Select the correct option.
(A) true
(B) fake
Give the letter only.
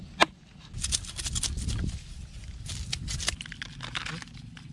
A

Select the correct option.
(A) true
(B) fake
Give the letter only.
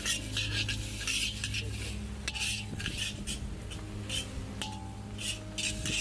A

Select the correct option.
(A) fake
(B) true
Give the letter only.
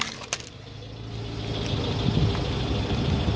B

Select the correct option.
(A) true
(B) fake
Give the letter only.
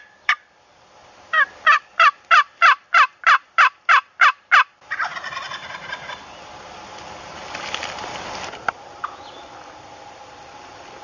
B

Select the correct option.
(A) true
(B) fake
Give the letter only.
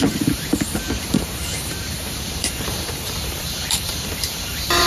B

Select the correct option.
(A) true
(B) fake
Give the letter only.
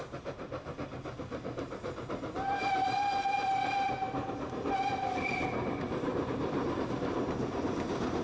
B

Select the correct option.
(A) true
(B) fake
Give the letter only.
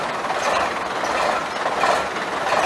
A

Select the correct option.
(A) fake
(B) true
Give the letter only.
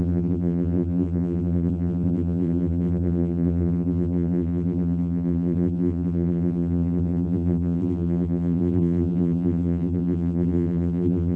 A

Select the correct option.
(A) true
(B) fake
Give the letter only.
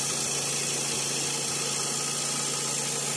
A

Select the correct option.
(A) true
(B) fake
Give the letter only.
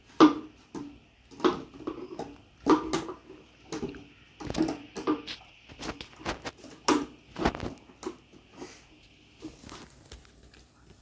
A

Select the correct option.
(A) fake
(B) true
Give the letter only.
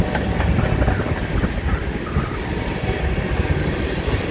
B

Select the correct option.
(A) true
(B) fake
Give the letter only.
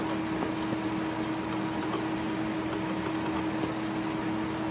A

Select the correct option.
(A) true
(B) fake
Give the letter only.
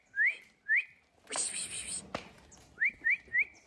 A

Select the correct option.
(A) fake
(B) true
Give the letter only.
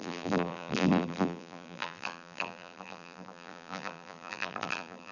A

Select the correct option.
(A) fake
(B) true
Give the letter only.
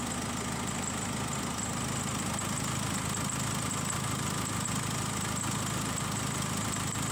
B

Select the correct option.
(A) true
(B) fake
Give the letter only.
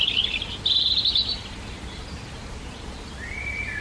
B